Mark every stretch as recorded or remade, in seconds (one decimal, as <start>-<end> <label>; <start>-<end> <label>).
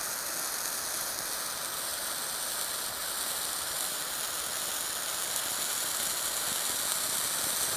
0.0-7.8 recorded